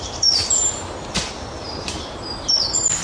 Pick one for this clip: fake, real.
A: fake